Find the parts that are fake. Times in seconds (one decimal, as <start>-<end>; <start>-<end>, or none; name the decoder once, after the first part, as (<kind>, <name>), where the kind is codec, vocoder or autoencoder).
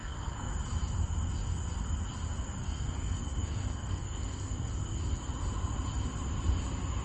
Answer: 0.0-0.5 (codec, SNAC); 2.6-4.7